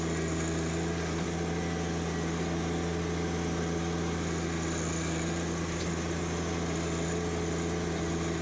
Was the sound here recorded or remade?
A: recorded